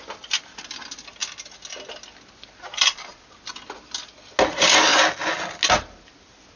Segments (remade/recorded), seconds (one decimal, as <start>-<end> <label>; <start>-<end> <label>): 0.0-6.6 recorded